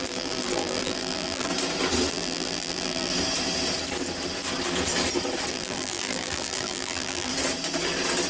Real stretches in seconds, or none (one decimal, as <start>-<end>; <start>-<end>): 1.5-2.1; 3.1-5.5; 7.3-8.3